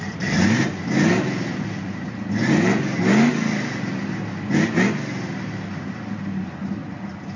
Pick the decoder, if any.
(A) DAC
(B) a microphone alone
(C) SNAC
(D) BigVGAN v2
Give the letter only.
B